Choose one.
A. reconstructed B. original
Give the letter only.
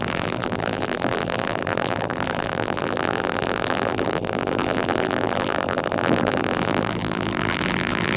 A